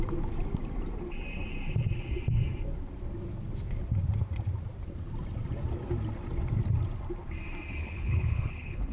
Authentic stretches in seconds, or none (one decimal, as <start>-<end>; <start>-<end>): 0.0-7.8